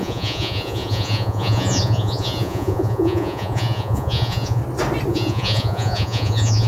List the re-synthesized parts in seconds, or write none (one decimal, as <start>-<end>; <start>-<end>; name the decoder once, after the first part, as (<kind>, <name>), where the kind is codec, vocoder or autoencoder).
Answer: 0.0-4.6 (vocoder, Vocos); 5.1-6.7